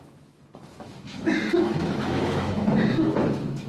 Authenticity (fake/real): fake